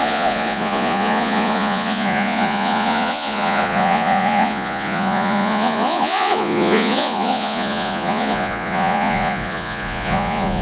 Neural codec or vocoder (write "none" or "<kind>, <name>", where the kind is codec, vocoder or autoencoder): vocoder, Vocos